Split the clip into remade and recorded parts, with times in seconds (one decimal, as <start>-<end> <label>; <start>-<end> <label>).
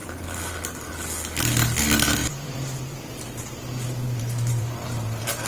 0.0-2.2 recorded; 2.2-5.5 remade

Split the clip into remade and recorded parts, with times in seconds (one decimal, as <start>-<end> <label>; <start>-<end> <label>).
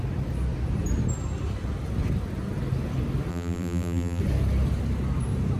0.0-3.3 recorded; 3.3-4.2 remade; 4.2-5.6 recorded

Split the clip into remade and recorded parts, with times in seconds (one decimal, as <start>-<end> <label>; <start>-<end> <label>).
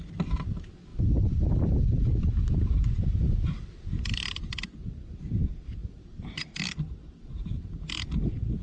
0.0-0.9 recorded; 0.9-2.9 remade; 2.9-5.8 recorded; 5.8-6.4 remade; 6.4-8.6 recorded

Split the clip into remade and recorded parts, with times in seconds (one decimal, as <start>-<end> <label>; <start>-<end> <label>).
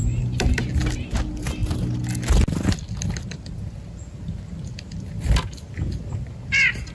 0.0-0.7 remade; 0.7-6.9 recorded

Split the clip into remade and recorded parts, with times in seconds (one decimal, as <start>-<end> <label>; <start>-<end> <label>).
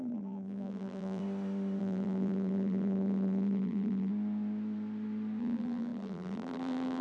0.0-1.2 remade; 1.2-1.8 recorded; 1.8-4.1 remade; 4.1-5.4 recorded; 5.4-7.0 remade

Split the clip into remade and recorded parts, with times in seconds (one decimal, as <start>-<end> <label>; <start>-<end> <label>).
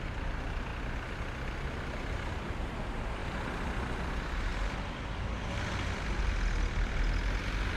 0.0-0.7 remade; 0.7-2.5 recorded; 2.5-3.2 remade; 3.2-4.0 recorded; 4.0-4.5 remade; 4.5-6.2 recorded; 6.2-7.8 remade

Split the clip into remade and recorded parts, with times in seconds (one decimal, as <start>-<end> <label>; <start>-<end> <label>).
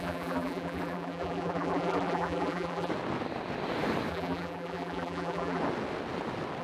0.0-2.9 remade; 2.9-4.1 recorded; 4.1-5.6 remade; 5.6-6.6 recorded